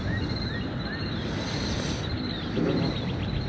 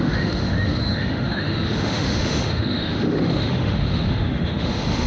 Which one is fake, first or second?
second